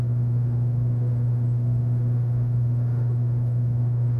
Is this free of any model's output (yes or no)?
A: no